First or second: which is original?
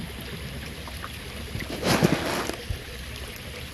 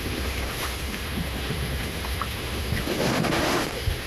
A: first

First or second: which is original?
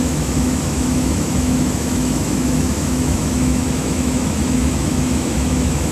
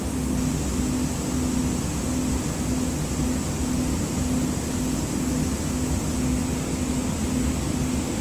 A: second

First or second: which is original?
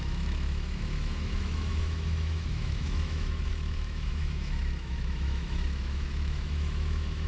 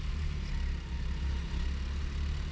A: second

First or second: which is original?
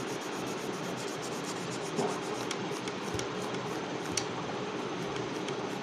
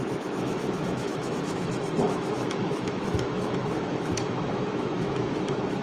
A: first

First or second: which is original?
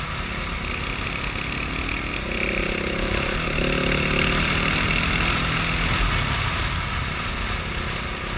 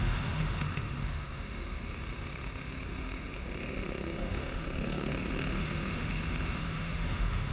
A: first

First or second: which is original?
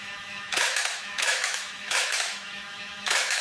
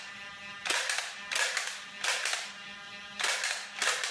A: second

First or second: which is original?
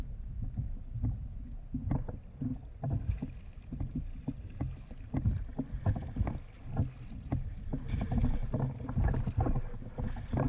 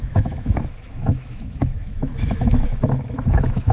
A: first